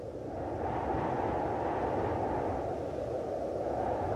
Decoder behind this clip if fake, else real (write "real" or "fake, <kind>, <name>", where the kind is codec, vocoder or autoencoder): real